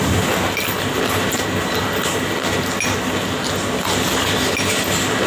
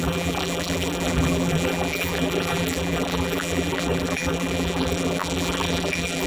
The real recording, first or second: first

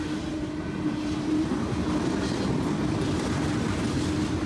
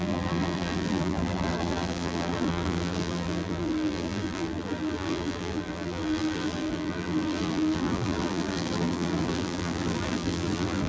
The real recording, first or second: first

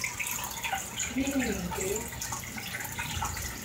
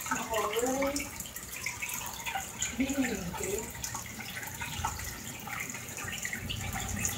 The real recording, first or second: first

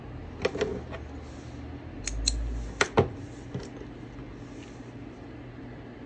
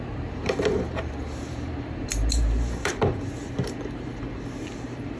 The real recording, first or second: first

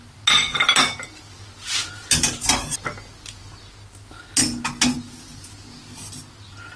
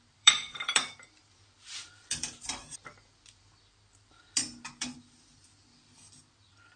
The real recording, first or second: first